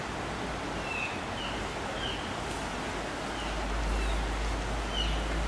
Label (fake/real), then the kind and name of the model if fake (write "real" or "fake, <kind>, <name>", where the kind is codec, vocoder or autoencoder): real